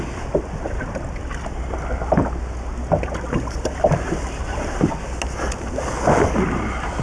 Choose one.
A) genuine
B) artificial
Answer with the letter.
A